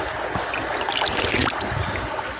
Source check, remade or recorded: recorded